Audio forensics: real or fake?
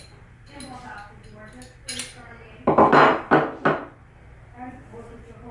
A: real